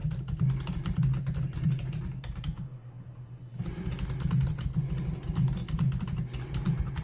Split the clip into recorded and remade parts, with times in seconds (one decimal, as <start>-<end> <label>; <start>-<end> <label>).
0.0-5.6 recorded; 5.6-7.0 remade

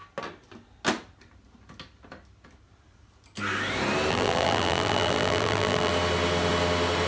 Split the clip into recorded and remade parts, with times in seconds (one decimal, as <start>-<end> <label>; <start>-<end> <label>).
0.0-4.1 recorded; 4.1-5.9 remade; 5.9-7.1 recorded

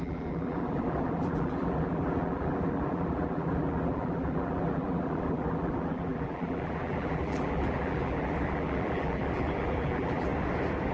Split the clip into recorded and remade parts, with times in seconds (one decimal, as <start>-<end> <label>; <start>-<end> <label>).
0.0-10.3 remade; 10.3-10.9 recorded